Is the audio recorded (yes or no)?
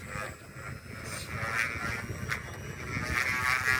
yes